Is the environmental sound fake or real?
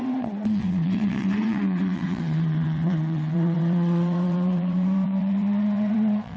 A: fake